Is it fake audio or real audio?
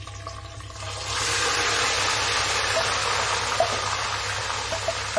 real